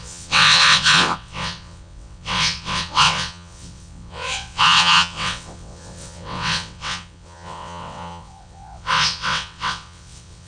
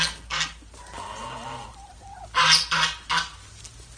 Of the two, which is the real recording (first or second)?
second